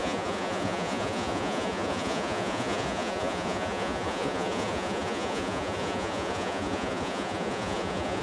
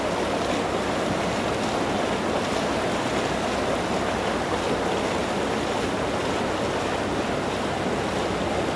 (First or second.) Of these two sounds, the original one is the second